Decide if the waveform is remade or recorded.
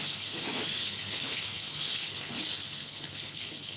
remade